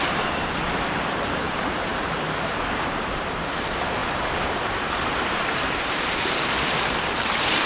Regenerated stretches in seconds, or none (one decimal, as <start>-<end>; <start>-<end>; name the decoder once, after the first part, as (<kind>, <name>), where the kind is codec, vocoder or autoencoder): 0.0-7.7 (vocoder, BigVGAN v2)